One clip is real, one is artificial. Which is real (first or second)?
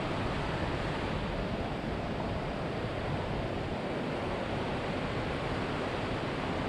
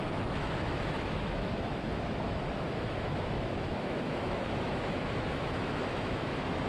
first